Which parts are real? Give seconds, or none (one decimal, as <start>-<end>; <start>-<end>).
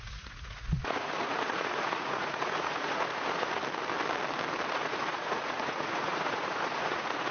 3.6-4.7